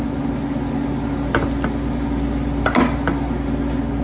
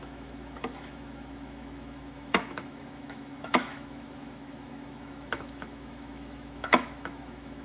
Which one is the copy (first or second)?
second